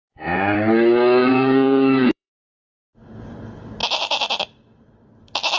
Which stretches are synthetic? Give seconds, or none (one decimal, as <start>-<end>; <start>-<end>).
1.2-2.3